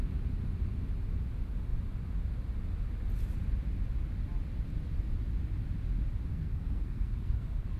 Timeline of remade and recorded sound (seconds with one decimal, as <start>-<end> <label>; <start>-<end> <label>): 0.0-6.3 recorded; 6.3-7.8 remade